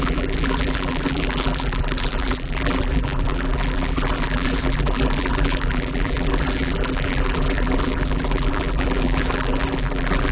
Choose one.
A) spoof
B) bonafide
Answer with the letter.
A